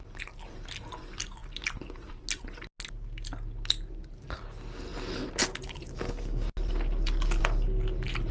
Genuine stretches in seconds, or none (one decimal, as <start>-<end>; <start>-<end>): 0.0-8.3